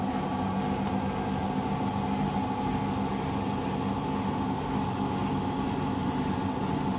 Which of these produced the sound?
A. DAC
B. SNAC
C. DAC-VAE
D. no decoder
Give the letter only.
D